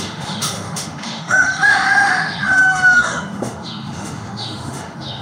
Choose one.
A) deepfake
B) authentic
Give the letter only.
A